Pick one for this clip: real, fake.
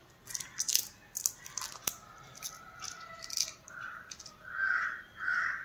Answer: real